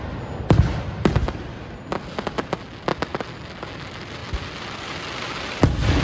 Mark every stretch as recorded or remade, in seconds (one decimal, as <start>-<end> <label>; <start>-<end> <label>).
0.0-2.9 recorded; 2.9-3.4 remade; 3.4-4.2 recorded; 4.2-4.8 remade; 4.8-6.0 recorded